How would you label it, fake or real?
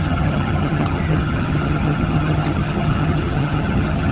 fake